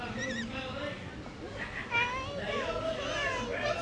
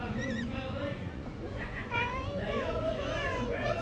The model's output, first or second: second